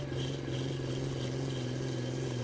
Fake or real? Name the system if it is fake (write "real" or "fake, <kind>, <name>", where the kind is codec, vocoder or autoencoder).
real